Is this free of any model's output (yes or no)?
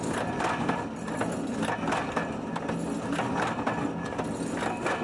yes